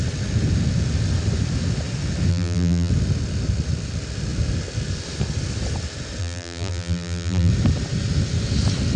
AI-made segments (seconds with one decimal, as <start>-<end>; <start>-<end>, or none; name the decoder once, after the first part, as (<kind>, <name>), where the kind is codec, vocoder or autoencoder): 2.3-2.9 (vocoder, BigVGAN v2); 6.2-7.5